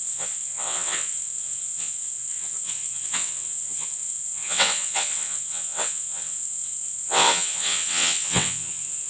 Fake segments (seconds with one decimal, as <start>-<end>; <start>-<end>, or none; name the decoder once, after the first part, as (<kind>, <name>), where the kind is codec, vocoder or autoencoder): 0.0-9.1 (vocoder, WaveNeXt)